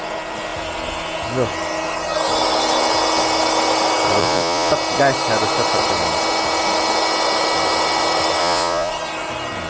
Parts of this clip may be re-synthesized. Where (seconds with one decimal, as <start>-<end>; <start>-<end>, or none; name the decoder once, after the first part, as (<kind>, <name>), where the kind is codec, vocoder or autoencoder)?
4.2-4.7 (vocoder, Vocos); 8.4-8.9